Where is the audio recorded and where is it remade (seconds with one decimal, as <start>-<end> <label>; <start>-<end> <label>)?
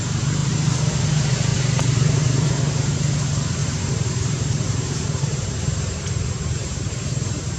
0.0-0.4 recorded; 0.4-0.9 remade; 0.9-1.5 recorded; 1.5-2.6 remade; 2.6-3.6 recorded; 3.6-7.6 remade